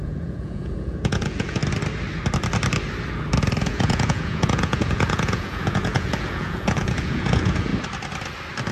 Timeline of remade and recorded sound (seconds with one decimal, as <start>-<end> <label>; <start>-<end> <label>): 0.0-1.6 remade; 1.6-3.6 recorded; 3.6-7.7 remade; 7.7-8.7 recorded